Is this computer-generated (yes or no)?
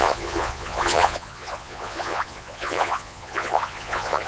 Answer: yes